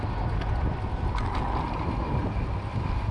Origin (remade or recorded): recorded